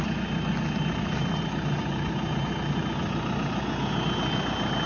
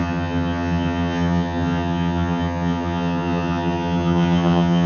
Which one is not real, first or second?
second